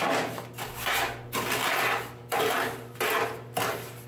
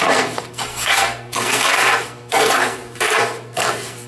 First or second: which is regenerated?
second